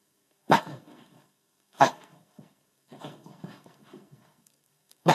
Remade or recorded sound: remade